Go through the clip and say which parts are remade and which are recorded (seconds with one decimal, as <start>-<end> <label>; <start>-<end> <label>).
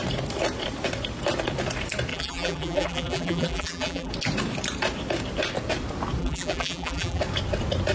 0.0-2.1 recorded; 2.1-4.1 remade; 4.1-6.2 recorded; 6.2-7.2 remade; 7.2-7.9 recorded